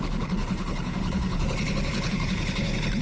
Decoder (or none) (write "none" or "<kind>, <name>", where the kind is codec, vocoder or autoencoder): codec, HILCodec